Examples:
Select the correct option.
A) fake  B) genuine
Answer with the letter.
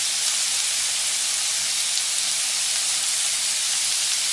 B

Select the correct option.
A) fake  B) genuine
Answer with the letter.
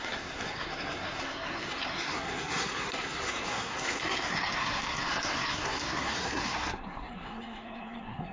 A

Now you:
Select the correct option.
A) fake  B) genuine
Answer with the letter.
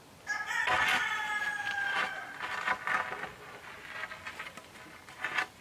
B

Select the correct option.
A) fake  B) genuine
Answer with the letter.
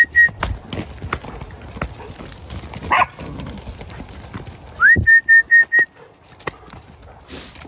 B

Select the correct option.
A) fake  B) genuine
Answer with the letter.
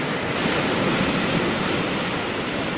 B